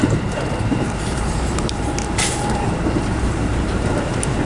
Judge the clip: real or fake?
fake